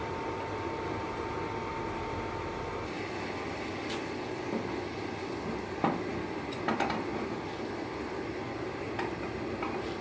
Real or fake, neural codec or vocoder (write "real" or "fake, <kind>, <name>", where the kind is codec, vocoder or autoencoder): real